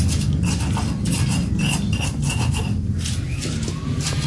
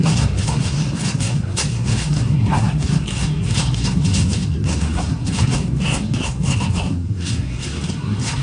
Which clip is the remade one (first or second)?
second